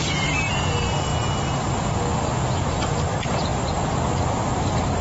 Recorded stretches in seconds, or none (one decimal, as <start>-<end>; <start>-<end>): 1.1-2.6